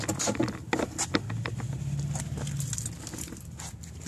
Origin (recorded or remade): recorded